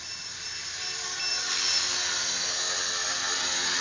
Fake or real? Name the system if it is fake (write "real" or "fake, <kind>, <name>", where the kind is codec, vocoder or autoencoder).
real